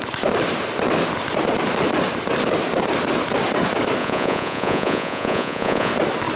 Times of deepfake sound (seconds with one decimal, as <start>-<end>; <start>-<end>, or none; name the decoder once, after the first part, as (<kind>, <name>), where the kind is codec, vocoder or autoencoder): 4.0-5.9 (vocoder, Vocos)